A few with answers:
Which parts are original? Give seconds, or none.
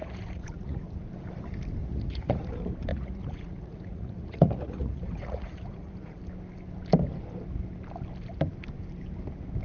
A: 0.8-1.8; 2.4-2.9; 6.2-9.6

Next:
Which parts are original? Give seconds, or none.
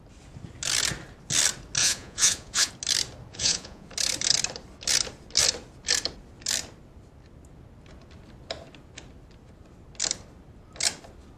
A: 0.0-1.8; 2.7-3.3; 3.9-11.4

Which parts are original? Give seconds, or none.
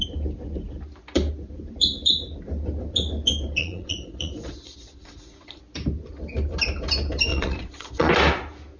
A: 0.0-3.6; 5.6-7.3; 8.1-8.8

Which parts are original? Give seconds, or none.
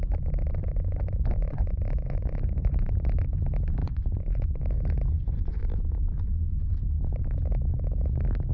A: 0.0-0.6; 3.2-3.8; 4.6-5.1; 5.6-8.5